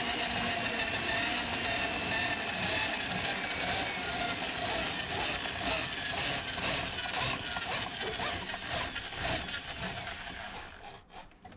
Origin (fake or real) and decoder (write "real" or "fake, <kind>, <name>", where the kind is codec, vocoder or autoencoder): real